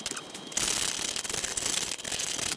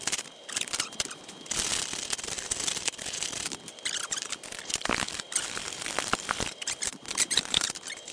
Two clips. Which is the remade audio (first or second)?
second